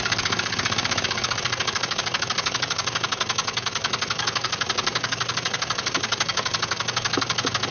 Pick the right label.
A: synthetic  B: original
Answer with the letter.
A